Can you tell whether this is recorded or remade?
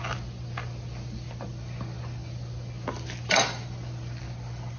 recorded